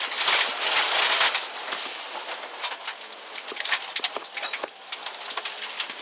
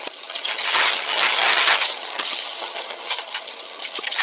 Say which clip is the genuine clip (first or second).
first